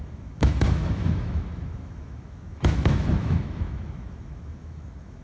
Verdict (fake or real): fake